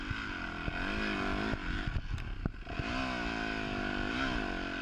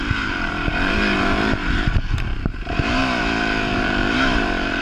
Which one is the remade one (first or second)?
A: second